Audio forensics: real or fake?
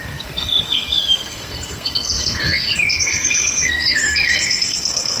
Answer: fake